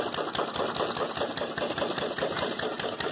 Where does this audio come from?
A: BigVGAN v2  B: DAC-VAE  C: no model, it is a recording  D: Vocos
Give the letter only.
C